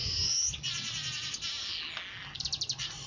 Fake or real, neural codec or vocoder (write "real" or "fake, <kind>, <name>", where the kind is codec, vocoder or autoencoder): real